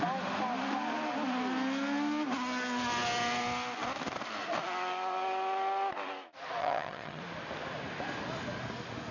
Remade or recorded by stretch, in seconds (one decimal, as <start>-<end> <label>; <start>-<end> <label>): 0.0-6.6 recorded; 6.6-7.2 remade; 7.2-9.1 recorded